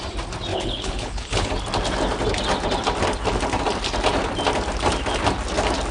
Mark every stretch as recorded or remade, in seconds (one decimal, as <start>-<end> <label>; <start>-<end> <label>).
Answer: 0.0-0.5 recorded; 0.5-1.5 remade; 1.5-5.9 recorded